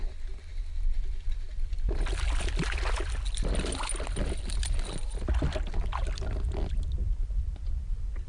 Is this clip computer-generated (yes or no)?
no